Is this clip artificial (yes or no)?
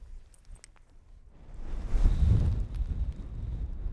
no